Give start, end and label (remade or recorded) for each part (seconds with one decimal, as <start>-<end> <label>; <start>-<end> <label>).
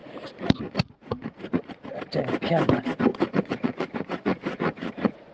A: 0.0-2.0 remade; 2.0-3.1 recorded; 3.1-5.3 remade